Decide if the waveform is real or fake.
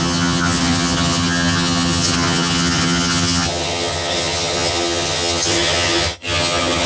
fake